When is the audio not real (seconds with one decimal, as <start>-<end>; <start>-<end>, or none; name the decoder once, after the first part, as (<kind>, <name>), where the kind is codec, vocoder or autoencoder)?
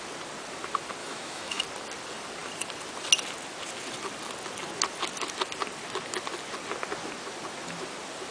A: 1.0-1.6 (autoencoder, DAC-VAE)